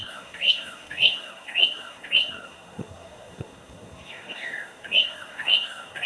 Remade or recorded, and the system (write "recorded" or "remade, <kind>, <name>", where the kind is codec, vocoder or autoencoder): remade, codec, SNAC